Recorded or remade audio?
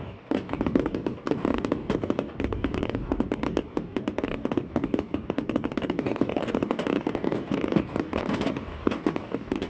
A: remade